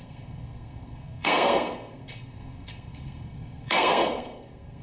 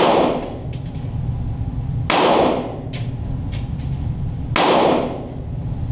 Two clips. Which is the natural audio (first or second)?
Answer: second